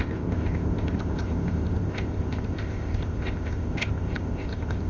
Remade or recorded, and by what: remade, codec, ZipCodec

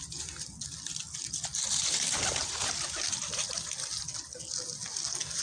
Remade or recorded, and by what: recorded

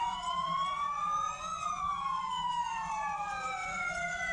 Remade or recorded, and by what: remade, vocoder, Vocos